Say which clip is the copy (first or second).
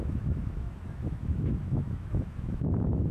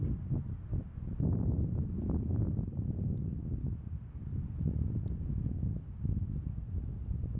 first